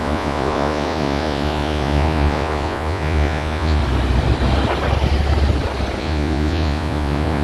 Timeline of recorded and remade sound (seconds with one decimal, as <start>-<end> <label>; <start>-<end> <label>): 0.0-3.8 remade; 3.8-6.0 recorded; 6.0-7.4 remade